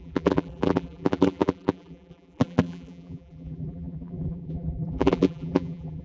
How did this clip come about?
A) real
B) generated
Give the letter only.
B